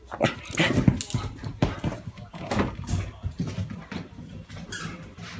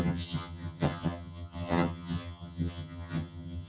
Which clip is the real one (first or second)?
first